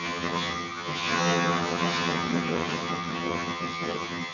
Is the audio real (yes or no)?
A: no